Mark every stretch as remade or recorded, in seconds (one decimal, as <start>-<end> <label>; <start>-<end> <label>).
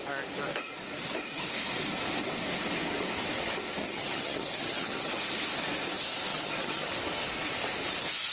0.0-3.8 recorded; 3.8-5.1 remade; 5.1-6.3 recorded; 6.3-6.9 remade; 6.9-8.3 recorded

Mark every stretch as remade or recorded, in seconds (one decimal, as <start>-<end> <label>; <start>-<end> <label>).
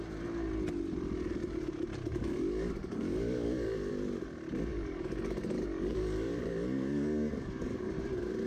0.0-2.1 recorded; 2.1-3.9 remade; 3.9-4.7 recorded; 4.7-7.9 remade; 7.9-8.5 recorded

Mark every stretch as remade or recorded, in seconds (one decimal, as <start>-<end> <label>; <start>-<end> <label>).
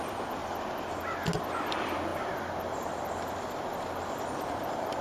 0.0-0.4 remade; 0.4-1.4 recorded; 1.4-5.0 remade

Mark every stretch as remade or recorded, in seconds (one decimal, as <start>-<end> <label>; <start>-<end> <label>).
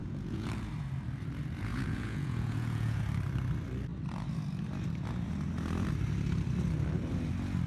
0.0-0.5 remade; 0.5-1.7 recorded; 1.7-3.0 remade; 3.0-7.7 recorded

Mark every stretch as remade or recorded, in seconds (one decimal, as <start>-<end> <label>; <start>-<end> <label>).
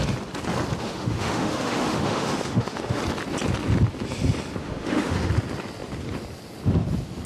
0.0-0.8 recorded; 0.8-3.0 remade; 3.0-4.6 recorded; 4.6-5.3 remade; 5.3-7.3 recorded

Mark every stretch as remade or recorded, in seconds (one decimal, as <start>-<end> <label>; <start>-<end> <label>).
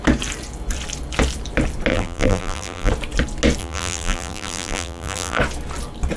0.0-1.9 recorded; 1.9-2.9 remade; 2.9-3.6 recorded; 3.6-5.4 remade; 5.4-6.2 recorded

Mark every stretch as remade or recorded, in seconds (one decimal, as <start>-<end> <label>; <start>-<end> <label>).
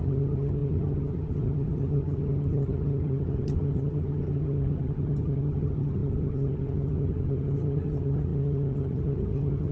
0.0-9.7 remade